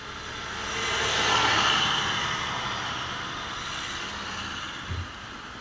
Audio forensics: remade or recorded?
recorded